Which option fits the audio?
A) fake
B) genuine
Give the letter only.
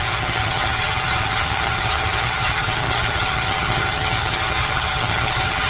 A